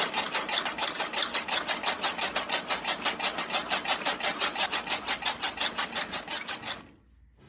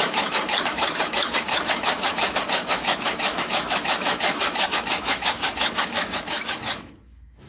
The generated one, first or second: second